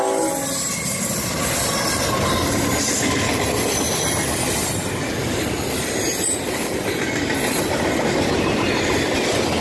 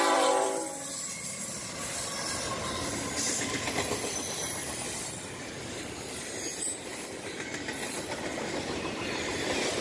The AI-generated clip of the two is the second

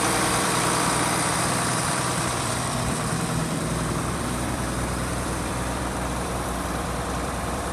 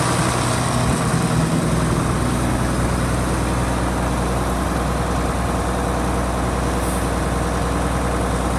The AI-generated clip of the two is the first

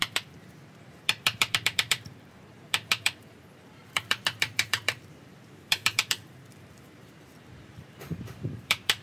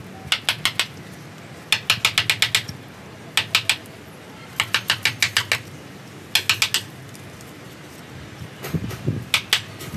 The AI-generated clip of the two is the first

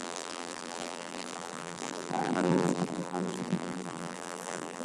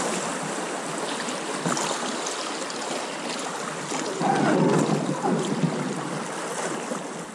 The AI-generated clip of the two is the first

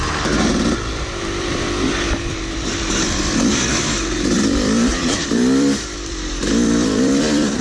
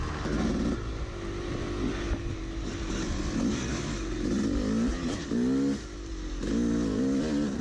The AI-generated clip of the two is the first